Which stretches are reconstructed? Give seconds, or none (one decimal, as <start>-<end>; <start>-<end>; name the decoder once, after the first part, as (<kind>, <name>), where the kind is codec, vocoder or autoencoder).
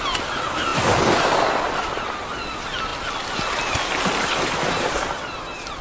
none